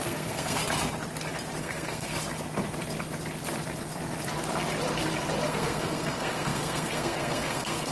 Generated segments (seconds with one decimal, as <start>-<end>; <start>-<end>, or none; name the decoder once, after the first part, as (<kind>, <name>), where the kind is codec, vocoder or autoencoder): 0.0-0.6 (codec, SNAC); 1.6-2.1; 5.5-7.9